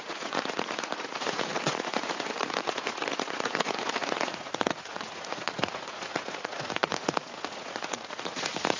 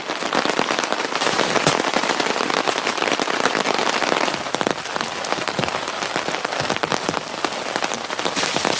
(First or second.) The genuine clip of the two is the second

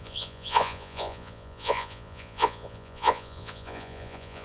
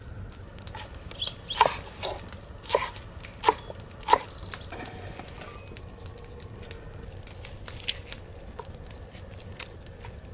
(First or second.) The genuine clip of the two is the second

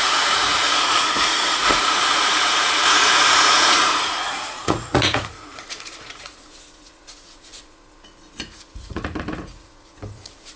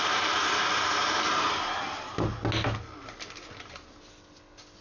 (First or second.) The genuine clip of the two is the second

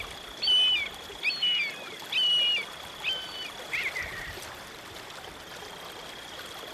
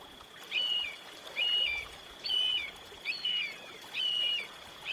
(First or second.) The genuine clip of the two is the first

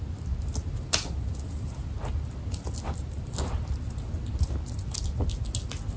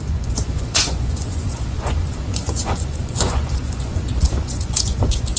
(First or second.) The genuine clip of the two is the first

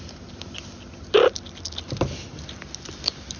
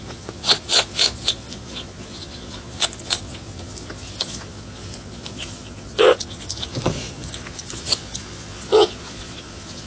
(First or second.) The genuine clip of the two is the first